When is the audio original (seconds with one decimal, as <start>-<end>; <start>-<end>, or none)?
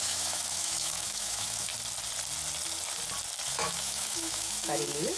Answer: 1.7-3.5